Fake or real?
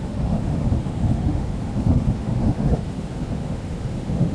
fake